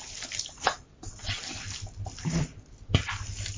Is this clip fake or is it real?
real